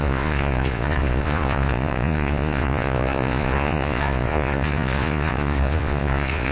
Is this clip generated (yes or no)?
yes